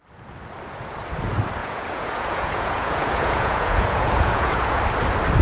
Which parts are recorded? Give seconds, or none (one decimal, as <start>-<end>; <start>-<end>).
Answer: 0.0-1.6; 4.8-5.4